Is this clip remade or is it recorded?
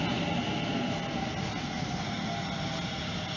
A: recorded